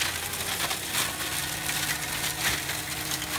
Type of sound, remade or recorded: recorded